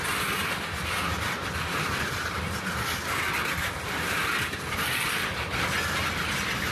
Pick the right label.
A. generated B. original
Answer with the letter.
A